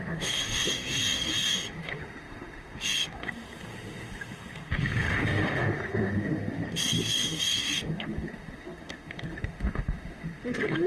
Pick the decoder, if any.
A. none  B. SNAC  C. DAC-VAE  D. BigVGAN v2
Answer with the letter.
C